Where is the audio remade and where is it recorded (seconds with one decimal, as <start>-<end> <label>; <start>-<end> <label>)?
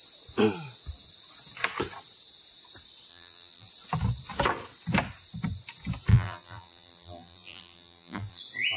0.0-3.1 recorded; 3.1-3.7 remade; 3.7-6.1 recorded; 6.1-8.4 remade; 8.4-8.8 recorded